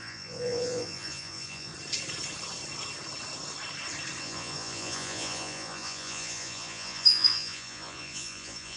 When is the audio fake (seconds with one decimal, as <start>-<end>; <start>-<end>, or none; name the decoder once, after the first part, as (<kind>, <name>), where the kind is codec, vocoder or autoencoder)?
0.0-1.7 (vocoder, Vocos); 4.2-8.8